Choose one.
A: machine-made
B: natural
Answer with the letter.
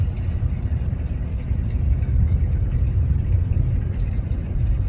B